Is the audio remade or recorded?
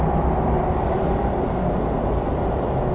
recorded